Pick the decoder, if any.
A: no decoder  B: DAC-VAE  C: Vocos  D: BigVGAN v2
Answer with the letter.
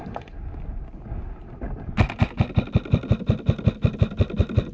A